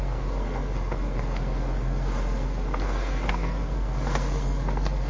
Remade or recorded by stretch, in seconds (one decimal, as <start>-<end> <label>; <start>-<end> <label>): 0.0-5.1 remade